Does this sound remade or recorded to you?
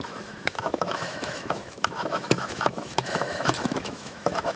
remade